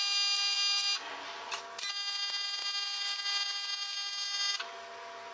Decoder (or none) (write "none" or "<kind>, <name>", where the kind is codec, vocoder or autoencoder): none